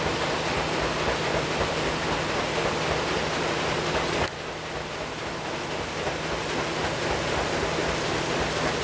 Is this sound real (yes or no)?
yes